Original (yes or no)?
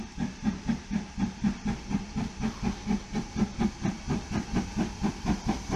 yes